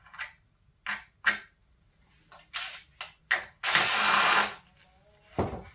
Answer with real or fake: real